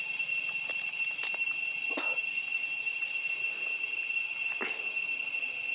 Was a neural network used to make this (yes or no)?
no